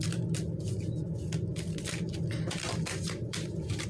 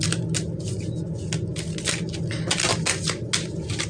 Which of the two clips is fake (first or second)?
first